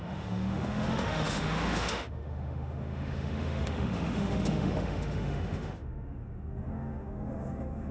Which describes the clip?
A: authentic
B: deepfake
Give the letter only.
B